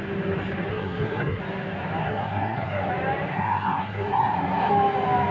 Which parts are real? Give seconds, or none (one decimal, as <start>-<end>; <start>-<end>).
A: 0.0-0.7; 1.4-2.0; 2.9-3.3; 4.7-5.3

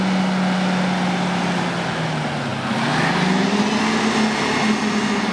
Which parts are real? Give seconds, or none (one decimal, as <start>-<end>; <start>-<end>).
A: 0.0-5.3

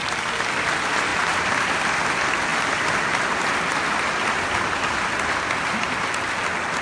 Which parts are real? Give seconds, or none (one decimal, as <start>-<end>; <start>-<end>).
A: 0.0-1.1; 2.0-6.8

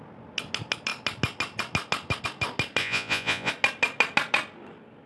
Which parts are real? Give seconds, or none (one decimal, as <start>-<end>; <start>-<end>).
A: 0.0-2.8; 3.5-5.1

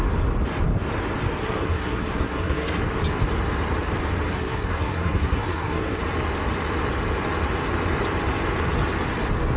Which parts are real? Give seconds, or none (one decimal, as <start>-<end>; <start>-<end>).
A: 0.0-1.4; 2.8-4.3; 6.0-9.6

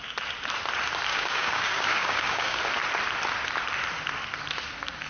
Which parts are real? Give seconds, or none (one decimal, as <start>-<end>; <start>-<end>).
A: 0.0-1.1; 2.6-5.1

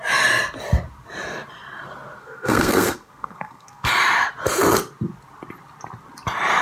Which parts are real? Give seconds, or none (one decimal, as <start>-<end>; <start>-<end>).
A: 0.0-2.2; 3.9-6.6

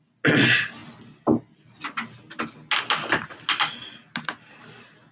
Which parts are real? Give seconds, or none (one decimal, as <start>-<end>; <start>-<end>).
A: 0.0-5.1